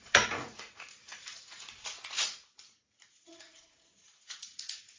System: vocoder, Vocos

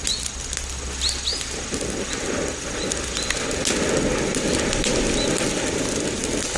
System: none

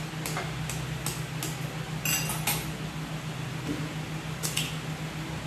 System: none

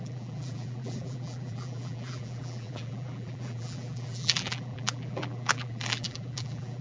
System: vocoder, BigVGAN v2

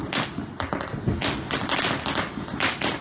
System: none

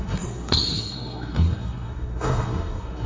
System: codec, SNAC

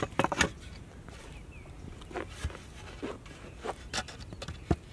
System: none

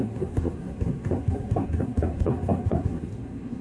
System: codec, SNAC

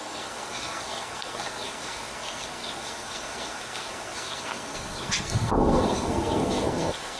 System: codec, SNAC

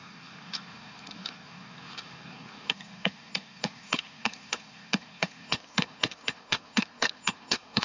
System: codec, SNAC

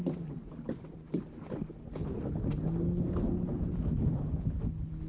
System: none